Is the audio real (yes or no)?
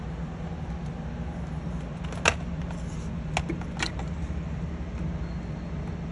yes